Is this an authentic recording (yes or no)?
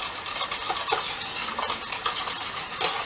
yes